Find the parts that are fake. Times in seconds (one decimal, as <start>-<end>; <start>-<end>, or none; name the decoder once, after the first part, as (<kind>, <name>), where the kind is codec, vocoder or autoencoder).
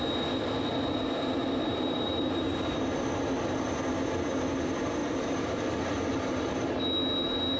1.7-3.2 (vocoder, BigVGAN v2); 5.0-6.8